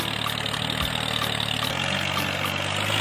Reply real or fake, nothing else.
real